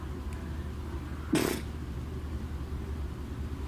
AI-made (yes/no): no